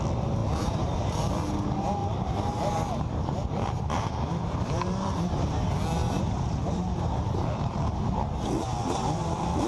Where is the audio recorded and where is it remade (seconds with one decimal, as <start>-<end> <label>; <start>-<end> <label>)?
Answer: 0.0-0.4 recorded; 0.4-1.3 remade; 1.3-2.0 recorded; 2.0-5.5 remade; 5.5-6.0 recorded; 6.0-7.9 remade; 7.9-9.7 recorded